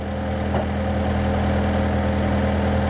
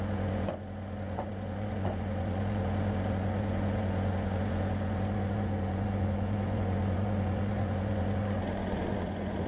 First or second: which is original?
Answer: first